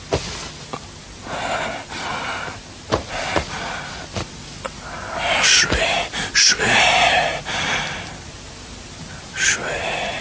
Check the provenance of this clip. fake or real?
real